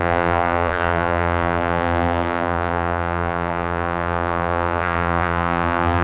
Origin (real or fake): fake